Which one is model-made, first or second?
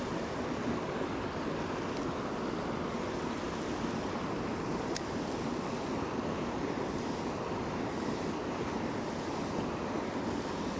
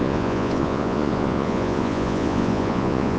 second